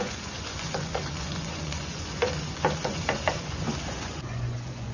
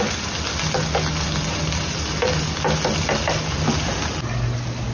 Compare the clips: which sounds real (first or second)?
second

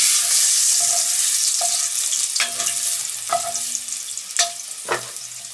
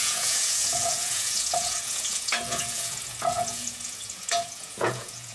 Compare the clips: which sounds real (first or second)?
first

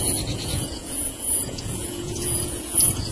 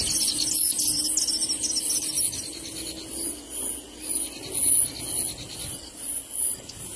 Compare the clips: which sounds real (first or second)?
second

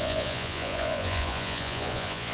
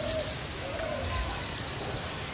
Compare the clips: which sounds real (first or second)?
second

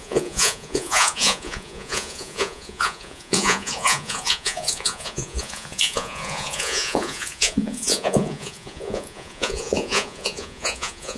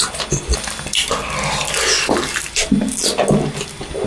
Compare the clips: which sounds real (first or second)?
second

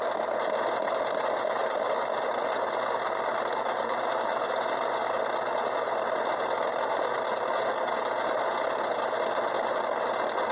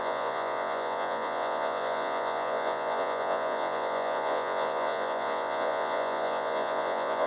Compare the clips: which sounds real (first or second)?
first